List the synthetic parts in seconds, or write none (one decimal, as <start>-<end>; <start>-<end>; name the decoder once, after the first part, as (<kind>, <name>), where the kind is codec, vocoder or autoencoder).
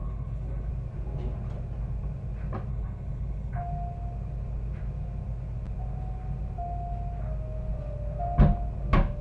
0.0-0.7 (codec, HILCodec); 2.7-3.6